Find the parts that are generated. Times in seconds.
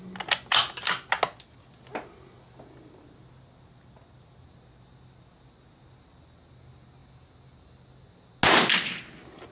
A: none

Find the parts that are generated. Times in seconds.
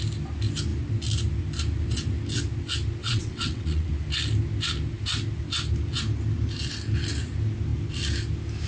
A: 3.0-3.9 (vocoder, WaveNeXt)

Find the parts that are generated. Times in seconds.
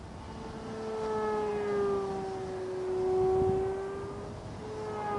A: none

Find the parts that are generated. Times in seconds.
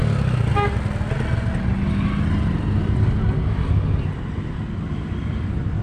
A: none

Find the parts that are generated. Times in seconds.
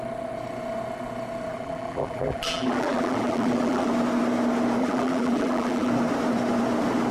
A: 1.5-3.9 (vocoder, BigVGAN v2); 4.8-5.9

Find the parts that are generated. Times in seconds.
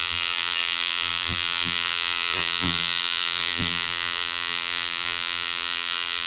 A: 0.0-6.3 (vocoder, BigVGAN v2)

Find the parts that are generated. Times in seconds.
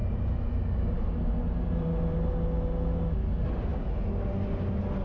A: none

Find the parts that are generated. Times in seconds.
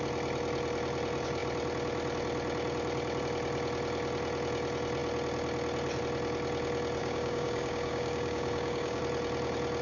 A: 7.0-9.0 (codec, DAC)